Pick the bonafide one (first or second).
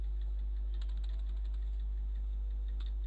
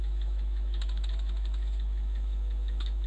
first